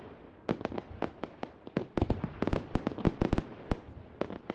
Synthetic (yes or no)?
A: no